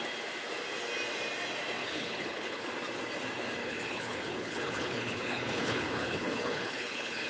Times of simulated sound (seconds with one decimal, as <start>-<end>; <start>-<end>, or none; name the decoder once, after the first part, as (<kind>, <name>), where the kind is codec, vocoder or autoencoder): 1.8-2.7 (codec, HILCodec); 3.6-7.3